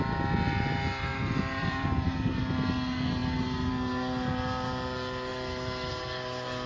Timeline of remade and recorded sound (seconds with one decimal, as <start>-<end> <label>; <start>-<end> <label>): 0.0-1.1 recorded; 1.1-2.1 remade; 2.1-5.3 recorded; 5.3-5.9 remade; 5.9-6.7 recorded